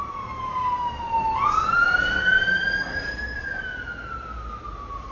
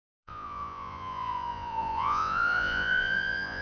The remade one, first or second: second